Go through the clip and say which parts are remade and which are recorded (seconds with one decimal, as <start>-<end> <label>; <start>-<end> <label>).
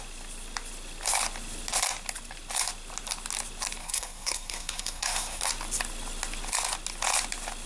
0.0-3.8 recorded; 3.8-5.4 remade; 5.4-7.7 recorded